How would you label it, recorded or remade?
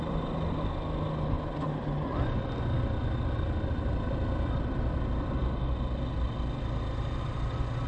recorded